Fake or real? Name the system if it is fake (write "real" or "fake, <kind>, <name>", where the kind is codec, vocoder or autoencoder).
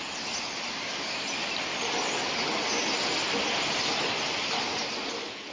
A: real